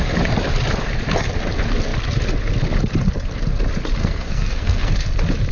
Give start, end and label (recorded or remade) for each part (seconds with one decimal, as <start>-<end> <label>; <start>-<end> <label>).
0.0-4.0 recorded; 4.0-5.1 remade; 5.1-5.5 recorded